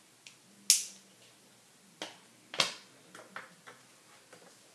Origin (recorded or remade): recorded